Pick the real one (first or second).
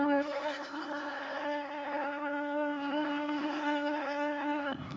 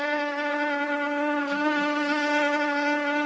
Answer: second